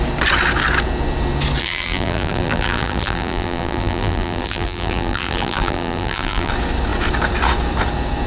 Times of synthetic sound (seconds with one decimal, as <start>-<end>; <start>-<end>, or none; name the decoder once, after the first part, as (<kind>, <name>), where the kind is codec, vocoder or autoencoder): 1.6-6.5 (vocoder, BigVGAN v2)